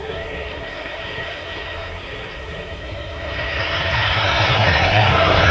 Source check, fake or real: fake